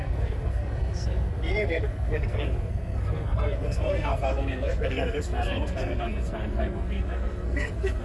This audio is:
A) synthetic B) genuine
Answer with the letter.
A